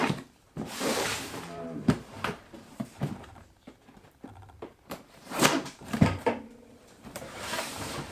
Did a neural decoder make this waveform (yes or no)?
yes